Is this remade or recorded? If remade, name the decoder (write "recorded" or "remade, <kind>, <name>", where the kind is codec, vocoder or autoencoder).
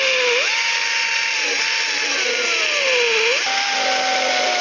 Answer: recorded